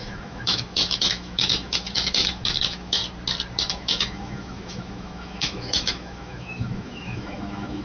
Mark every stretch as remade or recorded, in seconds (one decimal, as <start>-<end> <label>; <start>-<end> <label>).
0.0-3.0 remade; 3.0-3.7 recorded; 3.7-7.8 remade

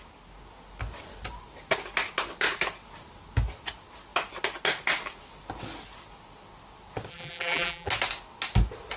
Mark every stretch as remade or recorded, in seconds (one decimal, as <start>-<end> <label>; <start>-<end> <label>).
0.0-7.1 recorded; 7.1-7.9 remade; 7.9-9.0 recorded

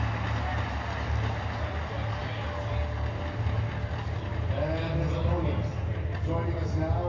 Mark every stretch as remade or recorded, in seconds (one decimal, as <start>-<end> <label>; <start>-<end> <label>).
0.0-7.1 recorded

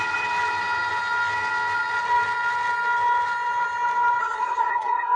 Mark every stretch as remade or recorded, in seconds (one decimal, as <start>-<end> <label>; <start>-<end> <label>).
0.0-4.2 recorded; 4.2-5.2 remade

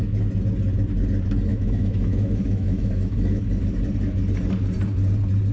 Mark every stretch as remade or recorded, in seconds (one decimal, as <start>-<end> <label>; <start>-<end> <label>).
0.0-1.5 recorded; 1.5-3.4 remade; 3.4-5.5 recorded

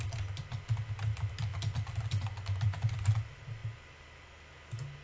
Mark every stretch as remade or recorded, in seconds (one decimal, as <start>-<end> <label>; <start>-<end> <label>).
0.0-5.0 recorded

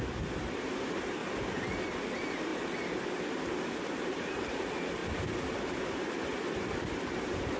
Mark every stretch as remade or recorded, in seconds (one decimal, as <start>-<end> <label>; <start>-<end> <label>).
0.0-1.2 remade; 1.2-2.1 recorded; 2.1-2.5 remade; 2.5-4.3 recorded; 4.3-5.0 remade; 5.0-5.8 recorded; 5.8-6.3 remade; 6.3-6.9 recorded; 6.9-7.6 remade